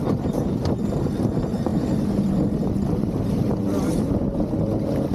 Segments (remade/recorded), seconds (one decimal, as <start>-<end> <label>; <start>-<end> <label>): 0.0-5.1 recorded